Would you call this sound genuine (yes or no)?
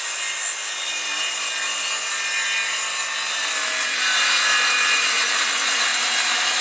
yes